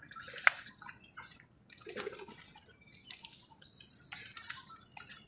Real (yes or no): yes